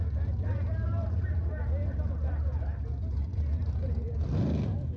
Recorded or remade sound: recorded